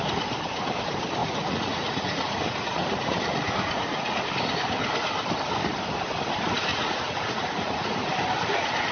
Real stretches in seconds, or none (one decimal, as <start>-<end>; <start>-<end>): 0.0-1.2; 4.3-6.7; 8.1-8.9